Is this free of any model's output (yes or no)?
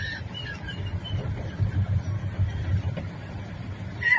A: yes